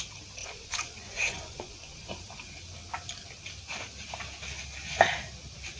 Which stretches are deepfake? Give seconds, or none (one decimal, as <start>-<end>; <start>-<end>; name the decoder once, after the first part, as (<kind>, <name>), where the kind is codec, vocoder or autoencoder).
0.4-2.1 (vocoder, Vocos)

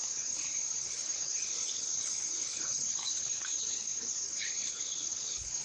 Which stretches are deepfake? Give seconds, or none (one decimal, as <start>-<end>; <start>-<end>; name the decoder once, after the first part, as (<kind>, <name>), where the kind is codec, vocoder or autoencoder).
0.0-5.6 (codec, HILCodec)

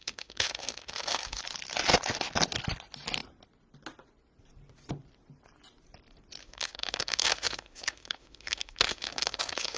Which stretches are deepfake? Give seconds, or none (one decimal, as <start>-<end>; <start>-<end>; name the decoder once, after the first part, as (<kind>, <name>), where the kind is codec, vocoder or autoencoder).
0.0-1.4 (autoencoder, DAC-VAE); 6.4-9.8

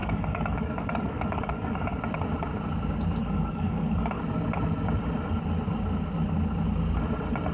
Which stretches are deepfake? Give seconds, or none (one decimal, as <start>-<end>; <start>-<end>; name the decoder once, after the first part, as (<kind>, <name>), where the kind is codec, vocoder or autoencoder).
0.0-2.0 (codec, DAC); 3.2-4.2

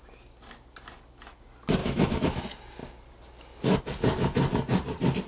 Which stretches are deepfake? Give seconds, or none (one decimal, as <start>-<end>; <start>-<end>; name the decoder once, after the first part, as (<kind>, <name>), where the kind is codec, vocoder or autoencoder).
1.8-2.4 (autoencoder, DAC-VAE)